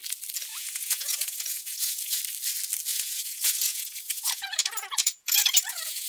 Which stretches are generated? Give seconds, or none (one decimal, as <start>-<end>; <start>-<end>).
0.5-2.2; 2.9-6.1